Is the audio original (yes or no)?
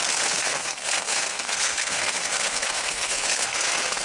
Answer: no